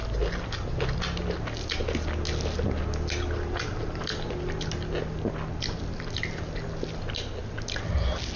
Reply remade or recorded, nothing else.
recorded